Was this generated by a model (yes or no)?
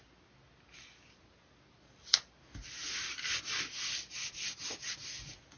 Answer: no